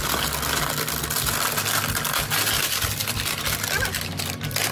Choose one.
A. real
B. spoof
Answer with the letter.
A